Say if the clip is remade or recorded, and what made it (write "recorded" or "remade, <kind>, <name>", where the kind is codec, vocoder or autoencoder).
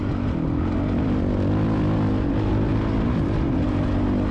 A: recorded